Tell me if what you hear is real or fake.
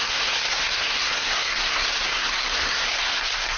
fake